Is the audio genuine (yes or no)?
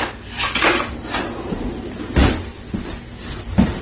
yes